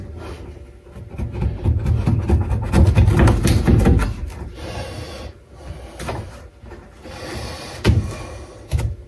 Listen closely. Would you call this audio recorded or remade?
recorded